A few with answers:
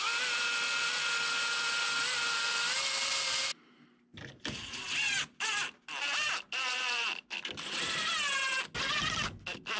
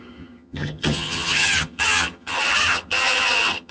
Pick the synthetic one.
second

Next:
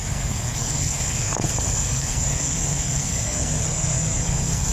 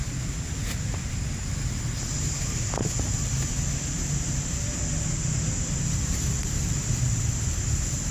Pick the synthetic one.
first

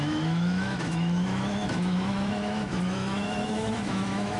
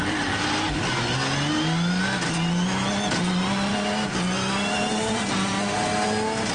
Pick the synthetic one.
first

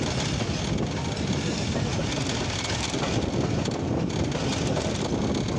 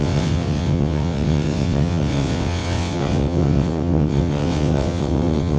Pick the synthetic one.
second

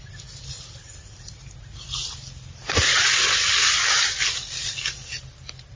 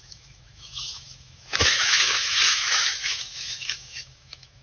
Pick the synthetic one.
second